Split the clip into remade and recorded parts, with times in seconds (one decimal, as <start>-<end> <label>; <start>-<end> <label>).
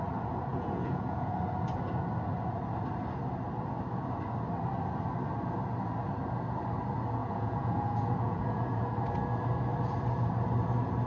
0.0-0.5 recorded; 0.5-1.4 remade; 1.4-7.2 recorded; 7.2-8.9 remade; 8.9-11.1 recorded